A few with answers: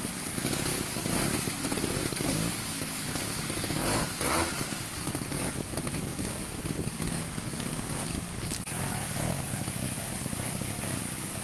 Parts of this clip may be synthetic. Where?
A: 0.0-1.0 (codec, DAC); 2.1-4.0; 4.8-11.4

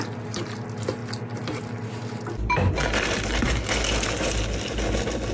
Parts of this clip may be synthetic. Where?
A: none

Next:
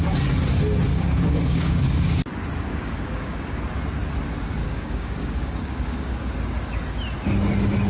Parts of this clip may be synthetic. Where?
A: 0.9-2.2 (codec, DAC); 2.7-3.6; 4.6-6.3